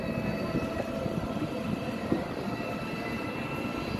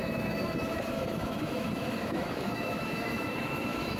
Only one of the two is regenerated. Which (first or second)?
second